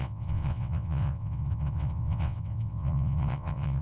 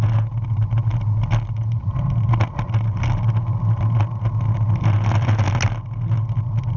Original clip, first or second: second